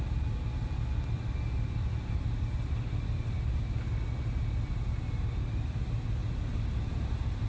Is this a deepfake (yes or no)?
no